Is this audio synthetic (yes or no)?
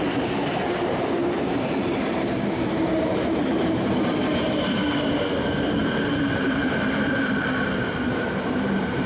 yes